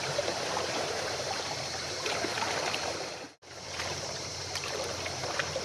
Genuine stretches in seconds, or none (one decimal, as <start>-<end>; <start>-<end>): none

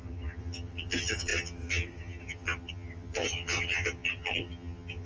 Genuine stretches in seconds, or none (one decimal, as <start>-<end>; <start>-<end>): none

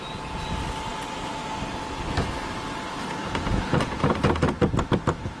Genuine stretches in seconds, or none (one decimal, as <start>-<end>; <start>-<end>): 0.0-3.5; 4.2-5.4

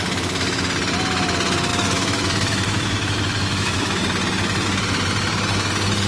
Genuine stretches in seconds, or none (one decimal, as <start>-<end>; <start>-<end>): 0.0-1.7; 4.0-6.1